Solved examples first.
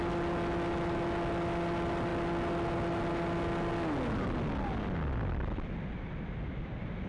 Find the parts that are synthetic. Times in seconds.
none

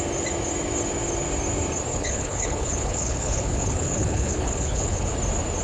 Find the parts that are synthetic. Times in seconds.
1.9-5.1 (codec, HILCodec)

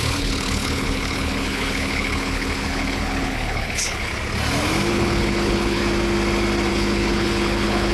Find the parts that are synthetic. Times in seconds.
0.0-4.1 (codec, HILCodec); 4.9-5.8; 6.7-7.9

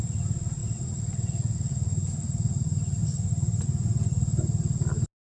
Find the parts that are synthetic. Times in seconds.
none

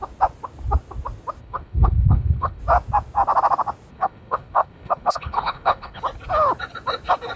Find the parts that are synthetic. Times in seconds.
1.4-2.6 (codec, HILCodec); 3.9-6.0

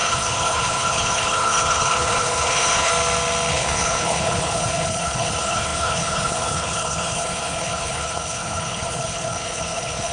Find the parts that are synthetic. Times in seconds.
0.0-2.9 (codec, HILCodec); 3.5-10.1

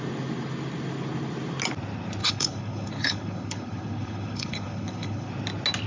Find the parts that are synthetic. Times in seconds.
2.2-5.3 (codec, HILCodec)

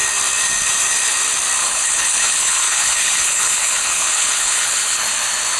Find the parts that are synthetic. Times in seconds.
1.6-5.0 (codec, HILCodec)